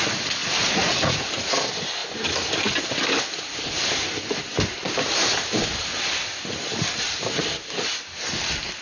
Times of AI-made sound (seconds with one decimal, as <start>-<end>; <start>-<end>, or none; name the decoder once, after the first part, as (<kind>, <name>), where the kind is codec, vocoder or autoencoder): 0.4-1.5 (vocoder, Vocos)